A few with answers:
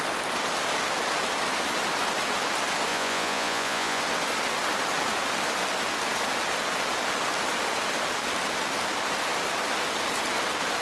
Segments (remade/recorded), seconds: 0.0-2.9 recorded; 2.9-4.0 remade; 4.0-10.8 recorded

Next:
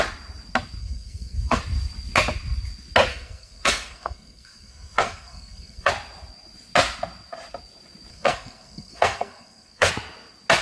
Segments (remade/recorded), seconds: 0.0-0.8 recorded; 0.8-1.6 remade; 1.6-3.1 recorded; 3.1-5.9 remade; 5.9-8.1 recorded; 8.1-9.9 remade; 9.9-10.6 recorded

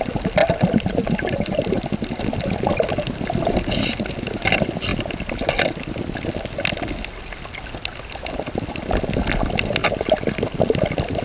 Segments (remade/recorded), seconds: 0.0-11.2 recorded

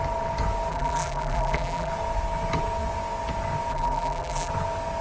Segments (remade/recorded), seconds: 0.0-0.7 recorded; 0.7-1.9 remade; 1.9-3.7 recorded; 3.7-4.5 remade; 4.5-5.0 recorded

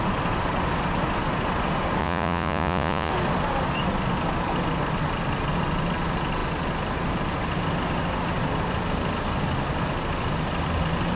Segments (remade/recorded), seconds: 0.0-2.0 recorded; 2.0-3.1 remade; 3.1-11.2 recorded